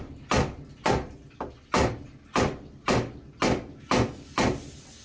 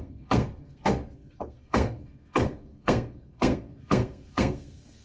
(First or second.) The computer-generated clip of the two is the second